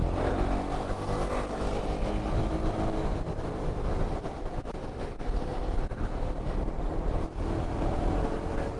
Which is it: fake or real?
real